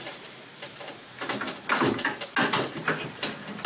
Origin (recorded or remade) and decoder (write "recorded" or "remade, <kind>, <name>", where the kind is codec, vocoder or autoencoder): recorded